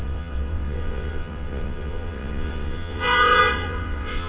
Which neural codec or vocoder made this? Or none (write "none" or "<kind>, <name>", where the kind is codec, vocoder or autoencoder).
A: vocoder, WaveNeXt